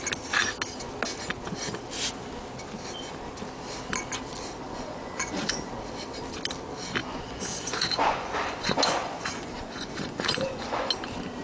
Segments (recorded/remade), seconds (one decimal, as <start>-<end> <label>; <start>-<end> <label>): 0.0-4.6 recorded; 4.6-5.7 remade; 5.7-7.0 recorded; 7.0-10.9 remade; 10.9-11.4 recorded